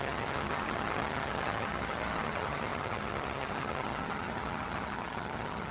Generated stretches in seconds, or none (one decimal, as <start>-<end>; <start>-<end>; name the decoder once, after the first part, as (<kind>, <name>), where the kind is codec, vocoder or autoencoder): 0.0-5.7 (vocoder, HiFi-GAN)